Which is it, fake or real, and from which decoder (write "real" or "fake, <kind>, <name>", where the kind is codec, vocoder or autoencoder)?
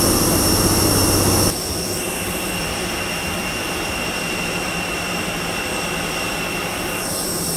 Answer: real